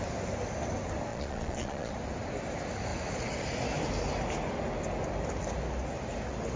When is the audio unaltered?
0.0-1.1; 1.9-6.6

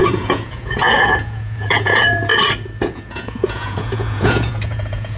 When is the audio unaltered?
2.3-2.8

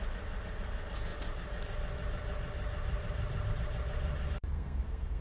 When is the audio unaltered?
0.0-4.5

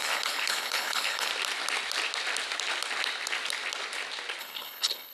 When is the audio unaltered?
1.3-4.4

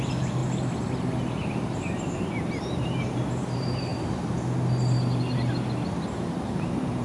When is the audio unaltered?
0.4-1.3; 3.9-6.1